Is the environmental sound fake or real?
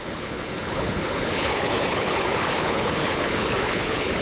fake